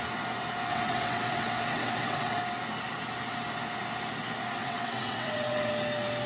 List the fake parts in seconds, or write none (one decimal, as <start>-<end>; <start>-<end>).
0.7-2.4; 4.6-5.7